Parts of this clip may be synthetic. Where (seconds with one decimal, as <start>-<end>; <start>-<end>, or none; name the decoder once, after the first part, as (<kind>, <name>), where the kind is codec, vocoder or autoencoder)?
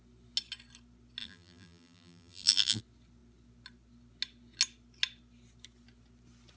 1.2-2.8 (vocoder, BigVGAN v2)